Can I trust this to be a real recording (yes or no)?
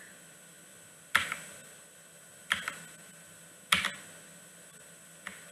yes